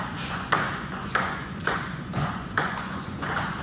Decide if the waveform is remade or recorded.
remade